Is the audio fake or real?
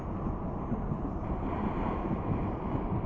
real